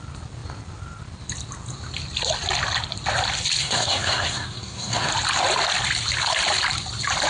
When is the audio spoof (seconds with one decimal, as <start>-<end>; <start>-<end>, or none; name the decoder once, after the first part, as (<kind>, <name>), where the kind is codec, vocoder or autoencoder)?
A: 3.6-5.1 (codec, SNAC)